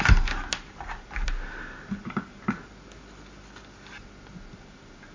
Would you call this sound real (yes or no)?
yes